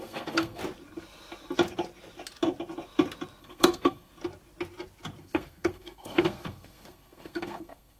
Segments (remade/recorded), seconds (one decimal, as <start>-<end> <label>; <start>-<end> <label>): 0.0-0.6 remade; 0.6-3.4 recorded; 3.4-4.1 remade; 4.1-5.2 recorded; 5.2-8.0 remade